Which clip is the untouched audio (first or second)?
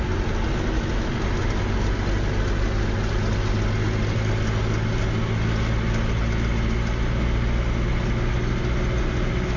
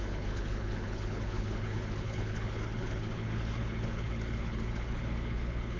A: first